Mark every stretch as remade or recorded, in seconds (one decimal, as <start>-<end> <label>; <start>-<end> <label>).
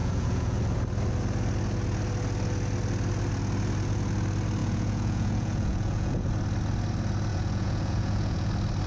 0.0-0.6 remade; 0.6-4.6 recorded; 4.6-6.3 remade; 6.3-7.3 recorded; 7.3-8.5 remade; 8.5-8.9 recorded